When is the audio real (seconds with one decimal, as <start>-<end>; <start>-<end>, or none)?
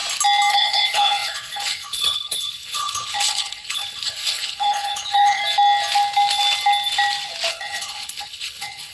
0.0-0.5; 5.4-7.5